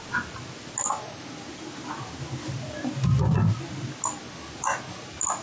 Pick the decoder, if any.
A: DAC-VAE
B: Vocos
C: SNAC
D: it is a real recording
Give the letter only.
D